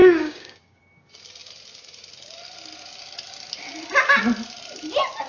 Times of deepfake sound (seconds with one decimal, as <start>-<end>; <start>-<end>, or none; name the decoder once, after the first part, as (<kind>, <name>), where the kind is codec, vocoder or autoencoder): 0.0-0.8 (codec, DAC)